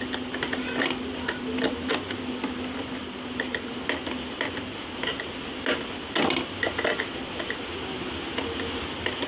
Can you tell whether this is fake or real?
real